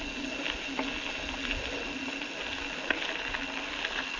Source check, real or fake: real